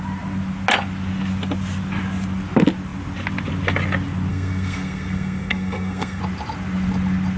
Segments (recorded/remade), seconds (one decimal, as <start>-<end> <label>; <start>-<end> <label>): 0.0-4.3 recorded; 4.3-6.2 remade; 6.2-7.4 recorded